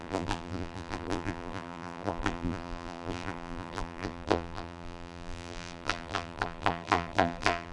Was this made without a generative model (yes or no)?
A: no